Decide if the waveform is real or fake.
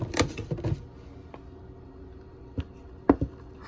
real